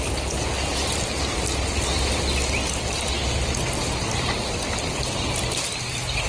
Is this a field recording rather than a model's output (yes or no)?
yes